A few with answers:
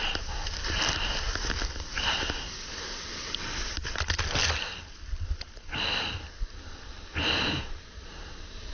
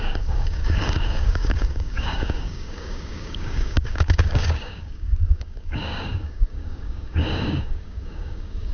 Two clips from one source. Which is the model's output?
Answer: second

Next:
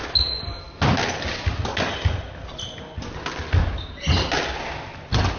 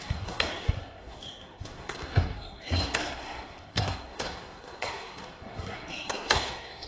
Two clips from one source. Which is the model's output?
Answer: second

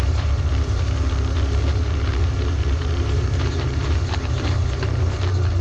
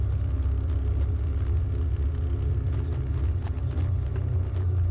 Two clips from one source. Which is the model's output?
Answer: first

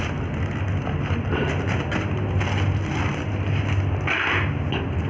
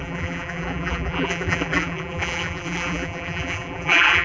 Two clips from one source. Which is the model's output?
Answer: second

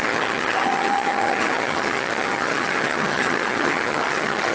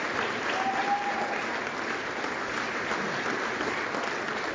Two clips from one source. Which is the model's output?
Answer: first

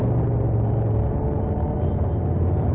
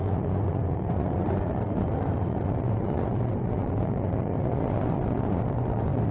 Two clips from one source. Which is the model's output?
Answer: second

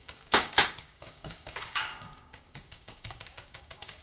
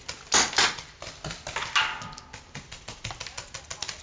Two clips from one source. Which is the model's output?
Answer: first